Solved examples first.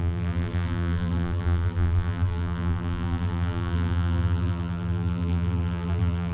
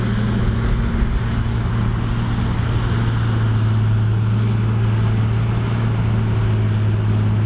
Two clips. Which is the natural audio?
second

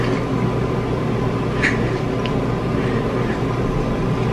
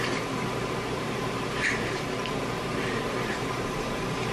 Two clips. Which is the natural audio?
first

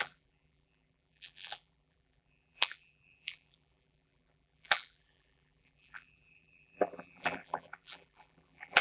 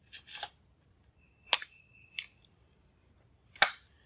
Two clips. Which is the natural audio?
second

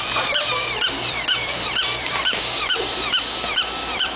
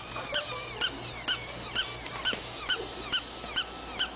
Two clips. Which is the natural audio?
second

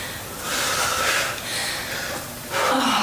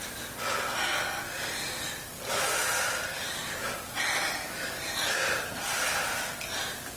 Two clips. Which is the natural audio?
second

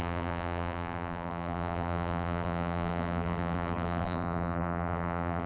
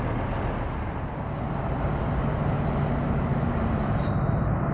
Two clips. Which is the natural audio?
second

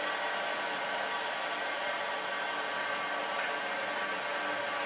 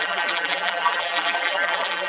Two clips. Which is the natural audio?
first